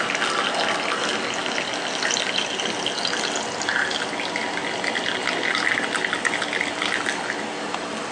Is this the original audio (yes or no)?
yes